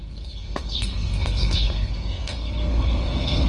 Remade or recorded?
remade